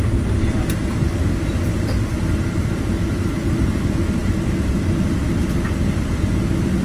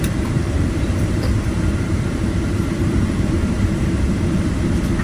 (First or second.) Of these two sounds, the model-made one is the second